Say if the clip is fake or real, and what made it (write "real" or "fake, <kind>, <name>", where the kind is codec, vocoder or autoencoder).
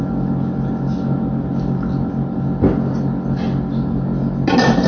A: real